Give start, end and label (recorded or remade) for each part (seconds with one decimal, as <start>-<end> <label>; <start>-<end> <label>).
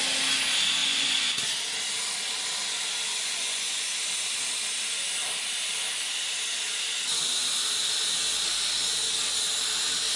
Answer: 0.0-0.8 recorded; 0.8-1.4 remade; 1.4-3.1 recorded; 3.1-3.9 remade; 3.9-10.2 recorded